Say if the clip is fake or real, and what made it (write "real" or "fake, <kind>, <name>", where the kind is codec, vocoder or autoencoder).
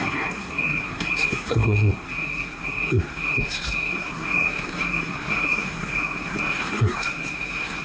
fake, codec, SNAC